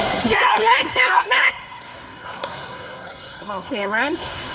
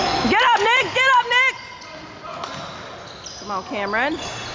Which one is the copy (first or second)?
first